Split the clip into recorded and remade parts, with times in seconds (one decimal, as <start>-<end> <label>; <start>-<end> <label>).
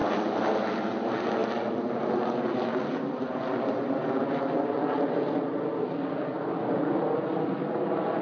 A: 0.0-8.2 recorded